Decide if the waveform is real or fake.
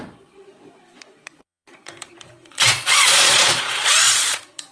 fake